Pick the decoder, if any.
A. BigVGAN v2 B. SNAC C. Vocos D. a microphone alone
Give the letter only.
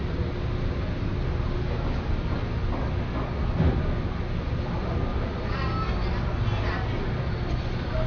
D